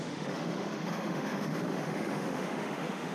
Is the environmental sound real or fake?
fake